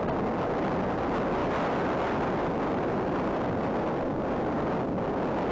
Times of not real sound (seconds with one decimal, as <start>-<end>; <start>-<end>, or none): 1.4-4.7